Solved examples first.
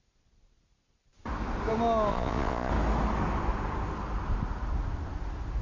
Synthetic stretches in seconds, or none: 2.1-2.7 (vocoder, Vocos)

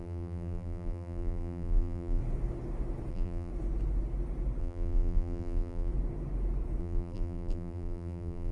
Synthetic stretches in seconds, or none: 0.0-2.2 (vocoder, BigVGAN v2); 3.1-3.5; 4.6-5.9; 6.8-8.5

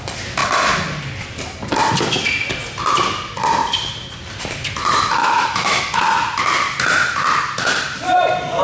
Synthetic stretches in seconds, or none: 5.2-5.8 (autoencoder, DAC-VAE)